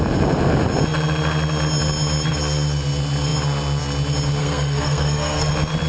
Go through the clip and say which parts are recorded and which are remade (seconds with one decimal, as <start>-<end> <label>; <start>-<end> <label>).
0.0-4.4 recorded; 4.4-5.5 remade; 5.5-5.9 recorded